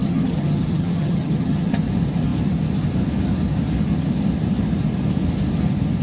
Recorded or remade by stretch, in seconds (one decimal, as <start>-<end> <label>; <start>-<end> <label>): 0.0-1.8 remade; 1.8-6.0 recorded